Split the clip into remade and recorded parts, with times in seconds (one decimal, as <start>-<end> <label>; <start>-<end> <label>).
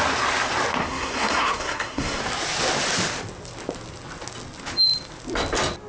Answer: 0.0-0.8 recorded; 0.8-2.2 remade; 2.2-5.9 recorded